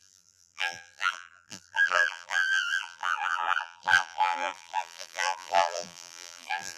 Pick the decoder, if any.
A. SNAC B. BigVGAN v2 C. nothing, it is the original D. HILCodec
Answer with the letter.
B